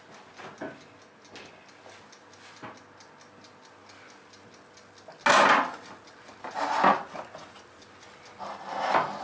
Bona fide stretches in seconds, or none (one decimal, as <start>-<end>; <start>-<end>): 0.0-9.2